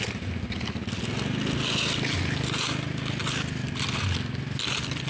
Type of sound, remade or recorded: recorded